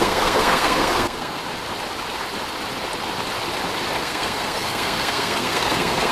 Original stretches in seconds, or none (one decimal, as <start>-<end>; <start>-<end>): 1.4-4.0